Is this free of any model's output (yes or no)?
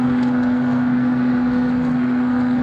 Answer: no